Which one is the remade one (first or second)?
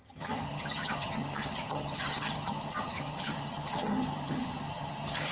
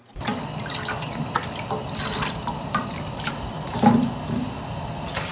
first